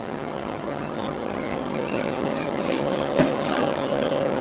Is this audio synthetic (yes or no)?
yes